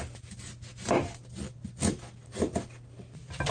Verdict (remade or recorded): recorded